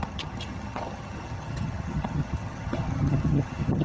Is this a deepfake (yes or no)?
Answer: yes